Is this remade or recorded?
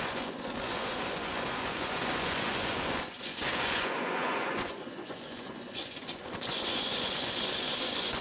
remade